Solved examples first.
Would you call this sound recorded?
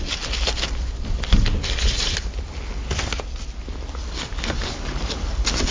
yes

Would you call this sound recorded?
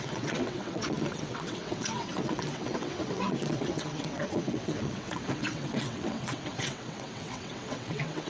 no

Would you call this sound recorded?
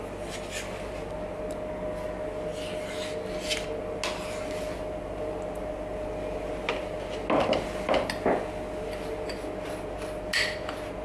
yes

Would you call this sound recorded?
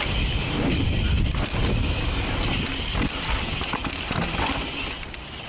yes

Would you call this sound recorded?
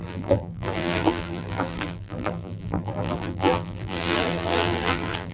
no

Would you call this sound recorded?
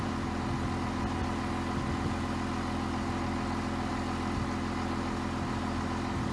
yes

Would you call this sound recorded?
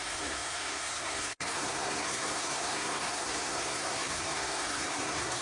no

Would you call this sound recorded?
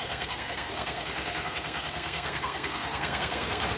no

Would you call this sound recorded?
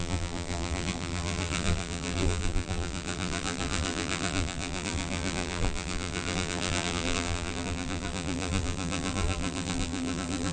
no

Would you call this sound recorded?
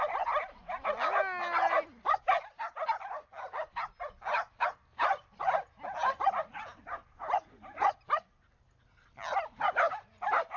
yes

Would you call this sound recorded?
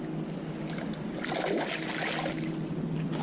yes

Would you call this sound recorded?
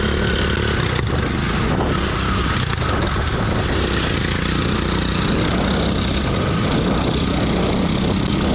yes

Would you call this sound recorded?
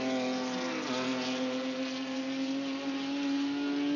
yes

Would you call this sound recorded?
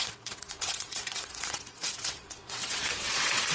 no